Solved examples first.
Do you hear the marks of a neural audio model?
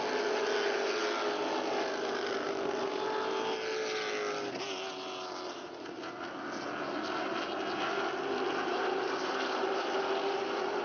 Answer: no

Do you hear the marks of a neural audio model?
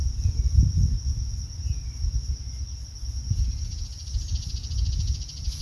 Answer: no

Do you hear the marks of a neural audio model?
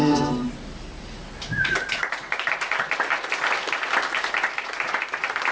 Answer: yes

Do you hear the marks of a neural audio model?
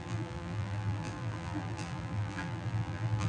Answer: yes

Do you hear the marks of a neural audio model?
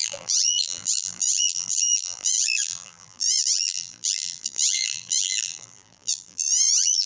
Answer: yes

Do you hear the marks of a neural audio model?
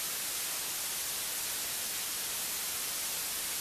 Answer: no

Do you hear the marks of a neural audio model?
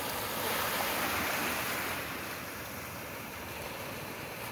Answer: yes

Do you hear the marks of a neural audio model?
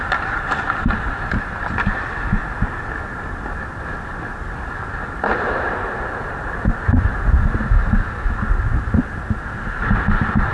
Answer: no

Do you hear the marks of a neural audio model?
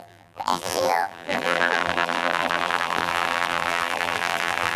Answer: yes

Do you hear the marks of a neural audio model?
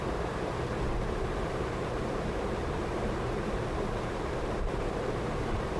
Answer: yes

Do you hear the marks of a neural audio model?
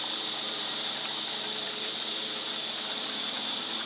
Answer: yes